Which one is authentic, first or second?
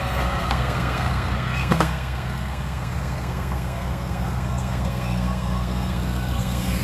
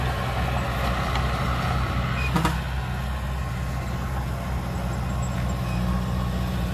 second